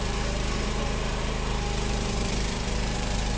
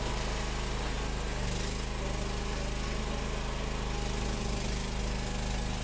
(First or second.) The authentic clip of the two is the second